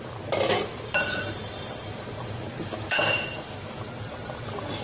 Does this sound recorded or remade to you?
remade